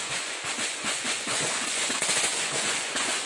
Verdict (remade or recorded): remade